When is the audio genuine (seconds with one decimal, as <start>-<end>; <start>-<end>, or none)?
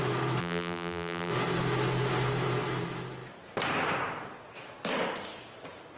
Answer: 0.0-0.4; 1.3-6.0